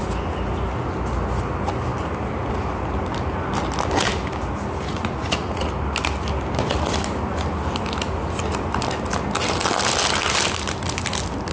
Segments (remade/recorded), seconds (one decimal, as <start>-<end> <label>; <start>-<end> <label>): 0.0-4.9 recorded; 4.9-5.7 remade; 5.7-11.5 recorded